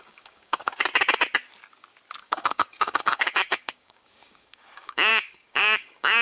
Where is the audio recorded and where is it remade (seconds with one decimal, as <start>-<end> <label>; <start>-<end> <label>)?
0.0-0.9 remade; 0.9-2.2 recorded; 2.2-6.2 remade